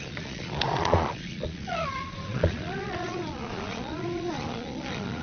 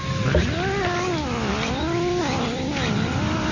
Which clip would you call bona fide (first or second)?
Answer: second